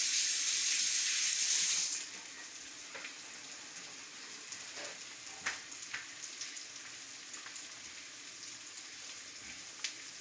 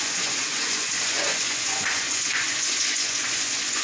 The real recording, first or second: first